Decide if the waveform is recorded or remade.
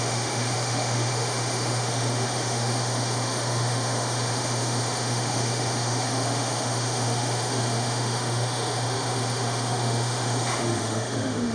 remade